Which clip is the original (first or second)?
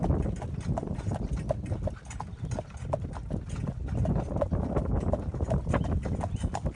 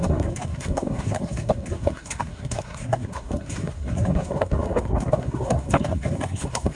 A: first